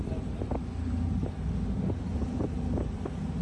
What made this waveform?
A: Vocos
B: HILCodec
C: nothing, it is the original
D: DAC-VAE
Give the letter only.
C